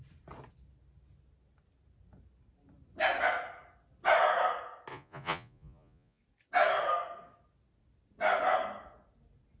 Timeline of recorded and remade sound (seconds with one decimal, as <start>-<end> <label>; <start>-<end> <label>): 0.0-4.9 recorded; 4.9-6.2 remade; 6.2-9.6 recorded